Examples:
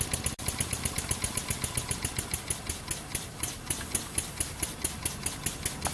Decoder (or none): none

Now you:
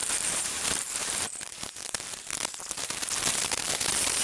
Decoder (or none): vocoder, BigVGAN v2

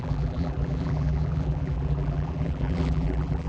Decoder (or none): vocoder, BigVGAN v2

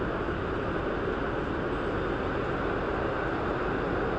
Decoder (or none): none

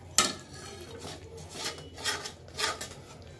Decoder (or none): none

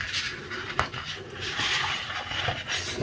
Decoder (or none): none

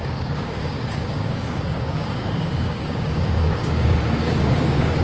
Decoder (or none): codec, DAC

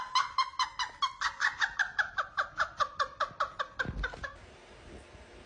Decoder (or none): none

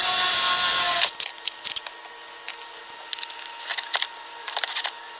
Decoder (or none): none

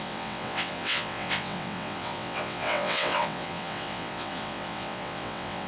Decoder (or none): vocoder, WaveNeXt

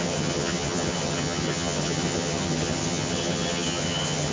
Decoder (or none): vocoder, HiFi-GAN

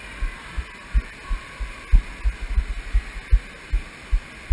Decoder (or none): none